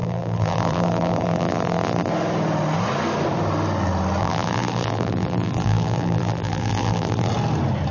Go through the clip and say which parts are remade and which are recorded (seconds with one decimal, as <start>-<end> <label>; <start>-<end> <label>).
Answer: 0.0-2.1 remade; 2.1-4.2 recorded; 4.2-7.3 remade; 7.3-7.9 recorded